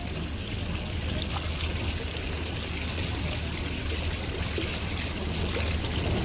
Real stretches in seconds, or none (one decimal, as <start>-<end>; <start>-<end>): 0.0-6.2